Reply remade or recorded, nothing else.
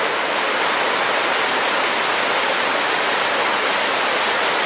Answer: recorded